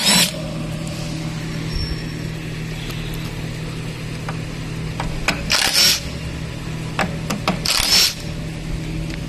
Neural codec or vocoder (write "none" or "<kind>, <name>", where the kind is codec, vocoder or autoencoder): none